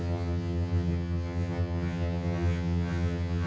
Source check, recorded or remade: remade